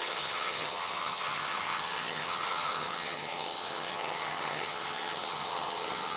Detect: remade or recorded remade